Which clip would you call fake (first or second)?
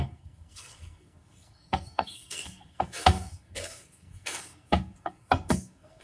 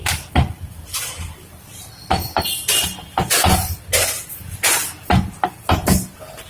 first